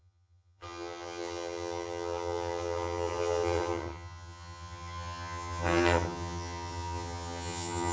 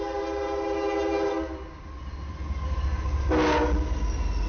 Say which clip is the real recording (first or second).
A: second